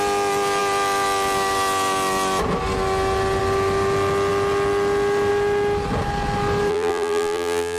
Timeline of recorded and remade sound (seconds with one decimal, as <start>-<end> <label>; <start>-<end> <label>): 0.0-6.7 recorded; 6.7-7.8 remade